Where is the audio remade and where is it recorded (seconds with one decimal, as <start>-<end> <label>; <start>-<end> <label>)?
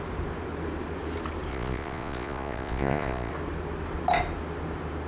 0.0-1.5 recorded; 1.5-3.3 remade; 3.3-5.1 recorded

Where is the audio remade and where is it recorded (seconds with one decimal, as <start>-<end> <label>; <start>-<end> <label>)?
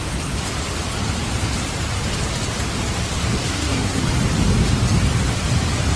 0.0-3.4 recorded; 3.4-4.0 remade; 4.0-6.0 recorded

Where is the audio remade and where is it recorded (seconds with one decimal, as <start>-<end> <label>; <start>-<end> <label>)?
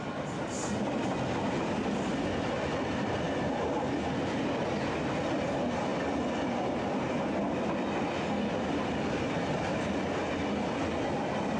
0.0-2.9 recorded; 2.9-3.6 remade; 3.6-11.6 recorded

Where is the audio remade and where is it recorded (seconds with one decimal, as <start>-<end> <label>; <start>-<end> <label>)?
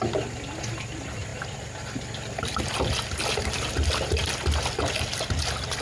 0.0-1.3 remade; 1.3-2.4 recorded; 2.4-5.8 remade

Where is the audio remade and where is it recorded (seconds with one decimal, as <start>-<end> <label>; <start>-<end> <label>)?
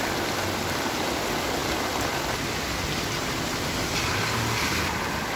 0.0-5.4 recorded